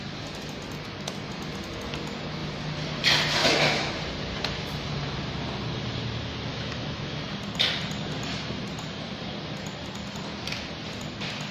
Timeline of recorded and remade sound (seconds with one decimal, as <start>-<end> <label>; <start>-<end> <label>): 0.0-3.4 recorded; 3.4-3.9 remade; 3.9-6.5 recorded; 6.5-7.2 remade; 7.2-11.5 recorded